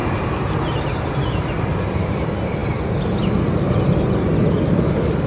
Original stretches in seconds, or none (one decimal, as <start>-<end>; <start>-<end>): 0.0-5.3